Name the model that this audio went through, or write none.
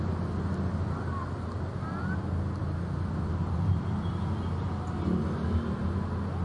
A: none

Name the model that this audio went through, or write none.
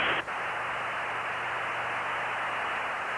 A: none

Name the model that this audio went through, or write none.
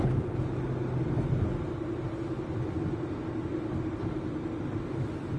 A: none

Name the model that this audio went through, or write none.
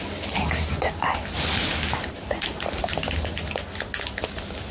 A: none